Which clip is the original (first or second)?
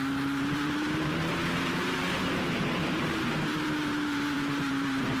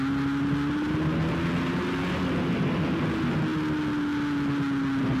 second